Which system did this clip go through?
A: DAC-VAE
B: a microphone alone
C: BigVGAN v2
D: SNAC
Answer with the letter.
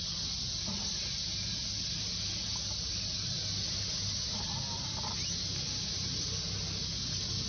B